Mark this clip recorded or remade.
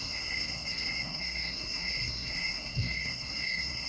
remade